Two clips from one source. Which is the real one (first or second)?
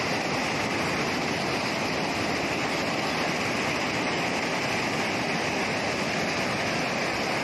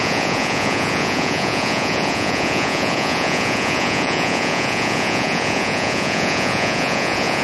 first